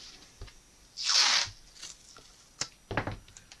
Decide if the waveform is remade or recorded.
recorded